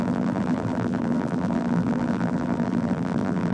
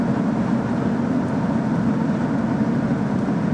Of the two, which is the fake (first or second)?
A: first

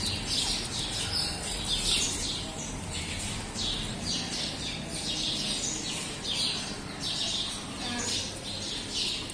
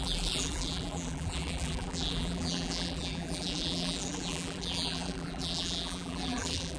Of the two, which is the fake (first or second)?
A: second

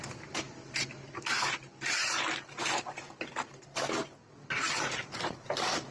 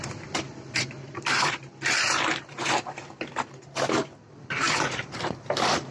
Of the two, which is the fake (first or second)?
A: second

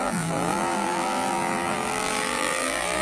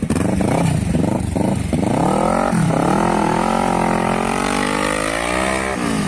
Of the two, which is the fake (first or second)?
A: first